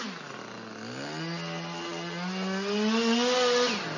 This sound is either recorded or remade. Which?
recorded